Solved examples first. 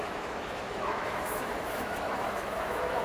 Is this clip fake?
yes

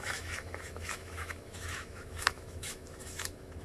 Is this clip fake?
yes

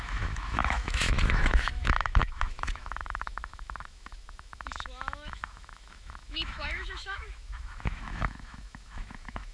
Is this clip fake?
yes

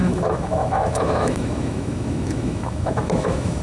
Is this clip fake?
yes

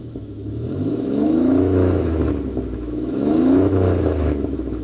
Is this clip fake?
yes